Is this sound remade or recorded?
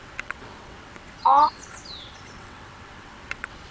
remade